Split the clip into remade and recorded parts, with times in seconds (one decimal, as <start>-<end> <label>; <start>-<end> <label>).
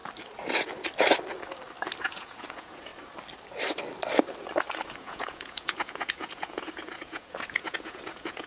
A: 0.0-2.0 recorded; 2.0-2.9 remade; 2.9-4.8 recorded; 4.8-8.5 remade